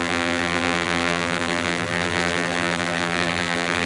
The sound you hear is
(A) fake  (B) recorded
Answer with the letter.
A